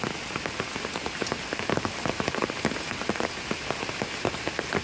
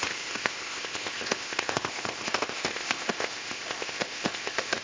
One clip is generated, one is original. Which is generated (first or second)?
second